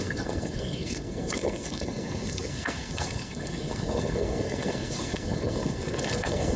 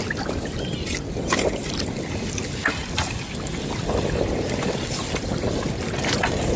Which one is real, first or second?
second